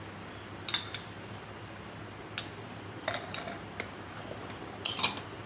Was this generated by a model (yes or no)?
no